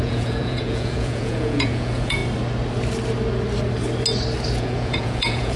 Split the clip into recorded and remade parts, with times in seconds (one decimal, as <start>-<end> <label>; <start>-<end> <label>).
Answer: 0.0-2.2 remade; 2.2-4.6 recorded; 4.6-5.6 remade